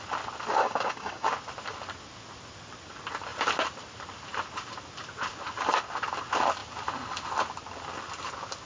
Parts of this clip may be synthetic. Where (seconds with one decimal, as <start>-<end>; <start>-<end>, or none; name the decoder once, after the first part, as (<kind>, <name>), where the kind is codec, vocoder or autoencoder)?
0.6-1.3 (codec, DAC)

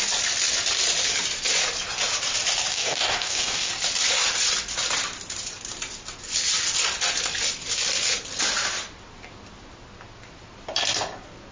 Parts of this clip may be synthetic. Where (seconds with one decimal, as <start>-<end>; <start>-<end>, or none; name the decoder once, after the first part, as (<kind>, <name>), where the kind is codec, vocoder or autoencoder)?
2.7-3.7 (codec, DAC)